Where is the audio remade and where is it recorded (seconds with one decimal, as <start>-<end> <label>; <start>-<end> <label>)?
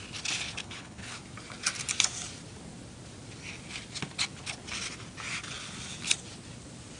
0.0-0.6 recorded; 0.6-1.2 remade; 1.2-7.0 recorded